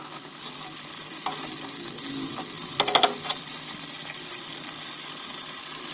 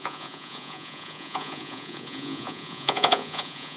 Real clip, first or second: first